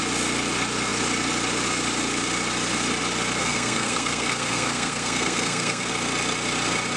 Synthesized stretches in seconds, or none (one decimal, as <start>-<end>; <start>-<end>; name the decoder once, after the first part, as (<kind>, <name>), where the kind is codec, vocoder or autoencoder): 3.4-5.9 (codec, SNAC)